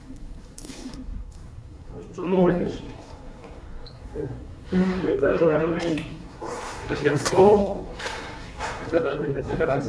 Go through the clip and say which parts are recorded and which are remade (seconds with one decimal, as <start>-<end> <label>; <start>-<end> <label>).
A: 0.0-9.9 remade